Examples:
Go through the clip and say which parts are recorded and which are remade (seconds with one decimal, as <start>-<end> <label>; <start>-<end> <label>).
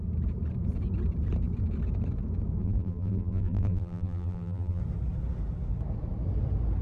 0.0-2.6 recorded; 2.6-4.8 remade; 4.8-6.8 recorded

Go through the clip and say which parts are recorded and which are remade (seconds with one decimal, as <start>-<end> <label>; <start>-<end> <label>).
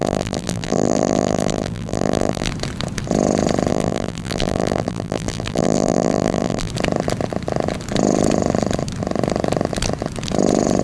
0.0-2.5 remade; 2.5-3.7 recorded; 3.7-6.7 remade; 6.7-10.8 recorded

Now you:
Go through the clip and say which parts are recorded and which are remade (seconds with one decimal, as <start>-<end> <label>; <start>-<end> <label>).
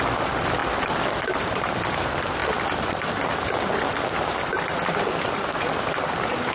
0.0-6.5 remade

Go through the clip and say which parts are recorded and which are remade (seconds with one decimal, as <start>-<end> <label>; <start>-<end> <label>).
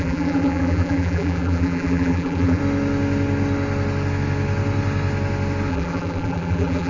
0.0-2.6 remade; 2.6-5.7 recorded; 5.7-6.9 remade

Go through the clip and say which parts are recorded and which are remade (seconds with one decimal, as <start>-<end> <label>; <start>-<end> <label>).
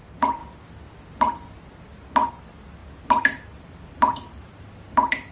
0.0-0.4 remade; 0.4-2.3 recorded; 2.3-2.8 remade; 2.8-3.5 recorded; 3.5-5.3 remade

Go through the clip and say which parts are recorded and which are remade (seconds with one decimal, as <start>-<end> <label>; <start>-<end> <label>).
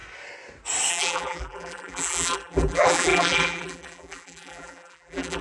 0.0-0.9 recorded; 0.9-5.4 remade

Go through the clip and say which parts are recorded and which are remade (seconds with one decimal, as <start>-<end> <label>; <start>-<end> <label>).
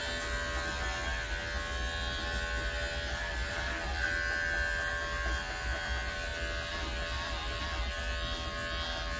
0.0-9.2 recorded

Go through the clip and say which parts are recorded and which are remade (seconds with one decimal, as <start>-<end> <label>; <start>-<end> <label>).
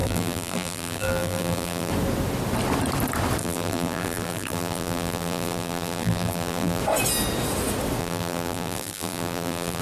0.0-1.9 remade; 1.9-3.4 recorded; 3.4-6.8 remade; 6.8-8.0 recorded; 8.0-9.8 remade